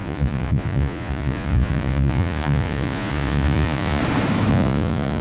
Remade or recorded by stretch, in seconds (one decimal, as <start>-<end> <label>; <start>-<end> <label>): 0.0-4.0 remade; 4.0-4.5 recorded; 4.5-5.2 remade